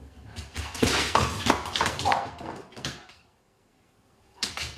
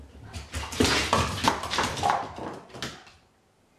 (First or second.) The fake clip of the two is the first